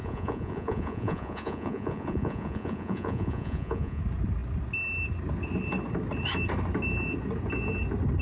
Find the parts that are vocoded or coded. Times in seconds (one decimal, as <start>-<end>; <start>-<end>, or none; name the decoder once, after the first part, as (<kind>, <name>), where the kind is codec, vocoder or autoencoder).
0.0-4.0 (vocoder, Vocos)